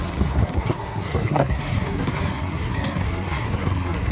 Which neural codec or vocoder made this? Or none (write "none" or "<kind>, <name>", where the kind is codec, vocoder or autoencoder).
codec, SNAC